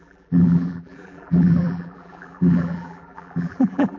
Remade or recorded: remade